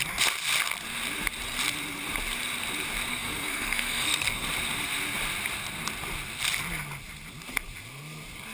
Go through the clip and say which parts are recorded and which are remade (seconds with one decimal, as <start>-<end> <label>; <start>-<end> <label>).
0.0-3.1 recorded; 3.1-4.4 remade; 4.4-8.5 recorded